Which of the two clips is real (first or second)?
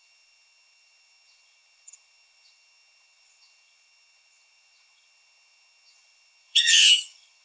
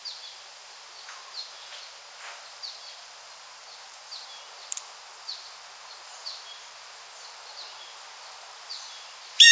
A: second